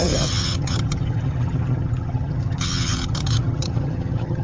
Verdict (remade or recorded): remade